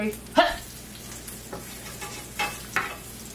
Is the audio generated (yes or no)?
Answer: no